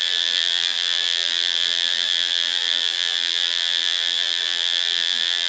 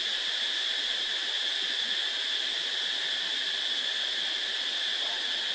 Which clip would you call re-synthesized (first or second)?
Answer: first